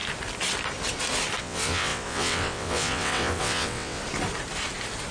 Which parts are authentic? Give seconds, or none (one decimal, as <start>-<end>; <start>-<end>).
0.0-1.4; 4.0-5.1